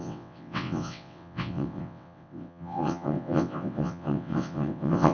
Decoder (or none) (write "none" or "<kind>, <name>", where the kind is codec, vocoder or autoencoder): vocoder, WaveNeXt